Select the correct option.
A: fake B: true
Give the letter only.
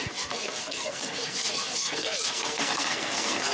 A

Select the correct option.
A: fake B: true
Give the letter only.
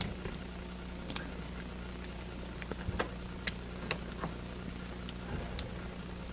B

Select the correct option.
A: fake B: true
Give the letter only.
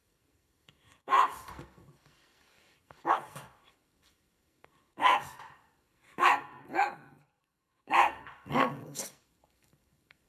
A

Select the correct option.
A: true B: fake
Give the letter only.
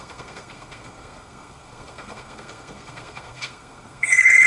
B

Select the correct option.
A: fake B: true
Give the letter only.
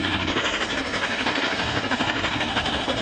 A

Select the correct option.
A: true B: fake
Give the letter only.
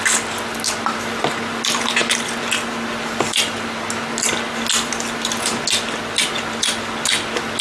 A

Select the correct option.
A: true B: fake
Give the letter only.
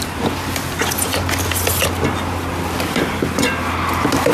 A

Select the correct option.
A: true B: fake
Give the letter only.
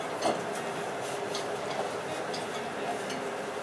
A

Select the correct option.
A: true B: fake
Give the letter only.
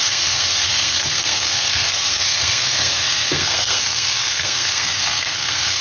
B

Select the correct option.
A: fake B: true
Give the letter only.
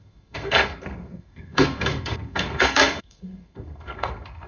A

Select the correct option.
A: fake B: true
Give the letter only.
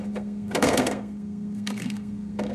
A